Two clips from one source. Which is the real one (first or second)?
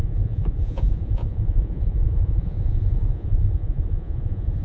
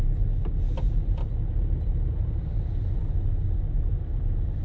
second